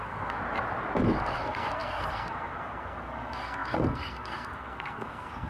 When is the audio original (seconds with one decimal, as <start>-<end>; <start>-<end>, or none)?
0.4-1.2